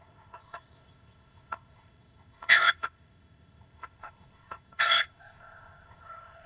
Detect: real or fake fake